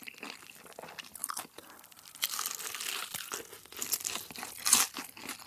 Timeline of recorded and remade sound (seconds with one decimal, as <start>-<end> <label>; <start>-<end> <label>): 0.0-5.5 recorded